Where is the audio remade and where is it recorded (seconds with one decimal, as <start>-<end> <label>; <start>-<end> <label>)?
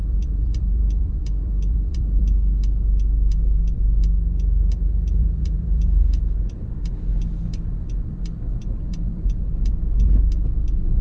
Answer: 0.0-2.2 remade; 2.2-5.2 recorded; 5.2-9.7 remade; 9.7-11.0 recorded